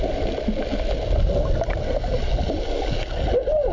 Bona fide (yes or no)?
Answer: yes